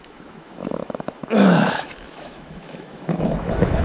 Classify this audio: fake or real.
fake